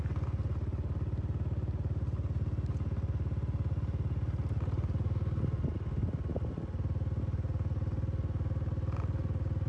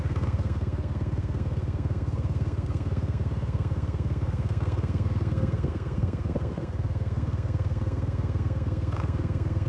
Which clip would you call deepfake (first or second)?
second